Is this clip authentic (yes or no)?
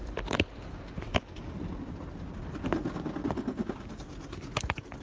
yes